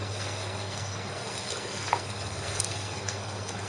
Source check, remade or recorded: remade